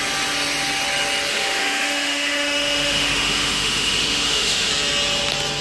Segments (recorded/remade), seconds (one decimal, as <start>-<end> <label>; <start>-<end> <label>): 0.0-1.3 recorded; 1.3-4.7 remade; 4.7-5.6 recorded